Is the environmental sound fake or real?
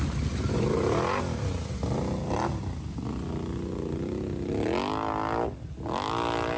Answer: real